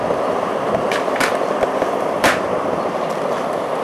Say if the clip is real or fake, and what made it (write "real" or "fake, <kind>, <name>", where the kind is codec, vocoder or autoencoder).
real